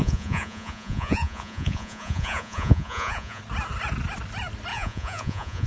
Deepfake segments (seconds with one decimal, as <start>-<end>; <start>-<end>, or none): 0.0-3.4; 4.7-5.7